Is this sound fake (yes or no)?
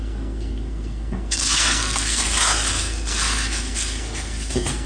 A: yes